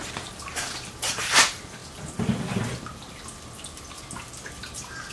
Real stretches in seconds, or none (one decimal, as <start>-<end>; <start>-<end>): 1.8-5.1